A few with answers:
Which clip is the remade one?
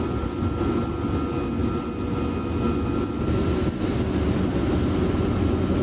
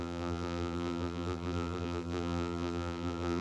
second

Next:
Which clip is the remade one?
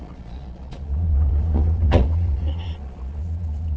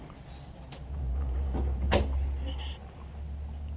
first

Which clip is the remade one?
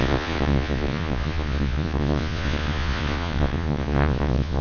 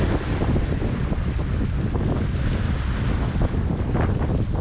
first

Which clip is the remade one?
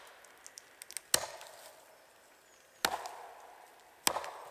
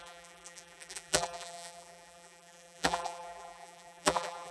second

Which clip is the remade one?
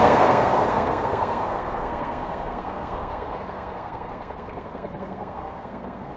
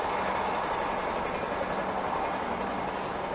first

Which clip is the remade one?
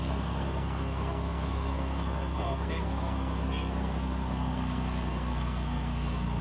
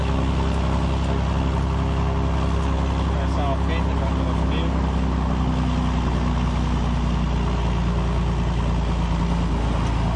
first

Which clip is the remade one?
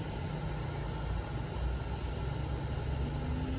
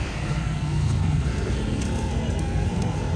second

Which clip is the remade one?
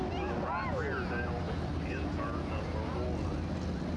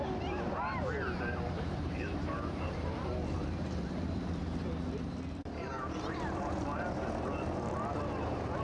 second